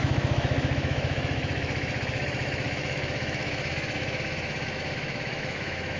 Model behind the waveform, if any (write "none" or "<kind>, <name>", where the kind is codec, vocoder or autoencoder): autoencoder, DAC-VAE